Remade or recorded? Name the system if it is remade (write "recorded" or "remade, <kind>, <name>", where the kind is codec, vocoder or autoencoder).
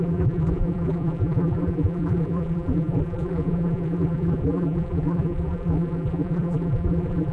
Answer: remade, vocoder, BigVGAN v2